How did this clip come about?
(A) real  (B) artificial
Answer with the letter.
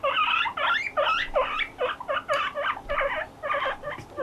A